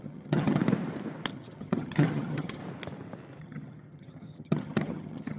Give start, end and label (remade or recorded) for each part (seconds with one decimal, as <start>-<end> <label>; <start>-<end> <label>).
0.0-0.6 remade; 0.6-1.3 recorded; 1.3-2.6 remade; 2.6-3.4 recorded; 3.4-5.4 remade